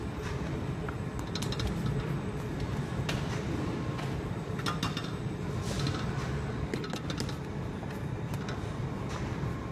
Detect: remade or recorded recorded